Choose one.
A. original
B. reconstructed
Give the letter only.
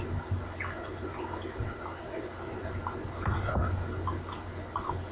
A